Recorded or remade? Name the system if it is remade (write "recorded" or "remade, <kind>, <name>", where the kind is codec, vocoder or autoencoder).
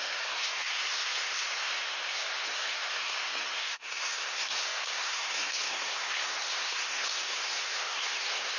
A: remade, codec, SNAC